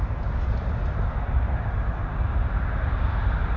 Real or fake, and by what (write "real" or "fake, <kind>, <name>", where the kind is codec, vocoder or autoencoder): real